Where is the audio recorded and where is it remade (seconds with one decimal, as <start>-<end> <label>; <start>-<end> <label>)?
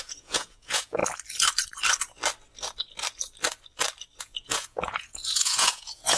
0.0-1.0 remade; 1.0-4.2 recorded; 4.2-6.2 remade